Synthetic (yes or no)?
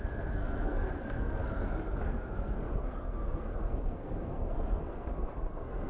yes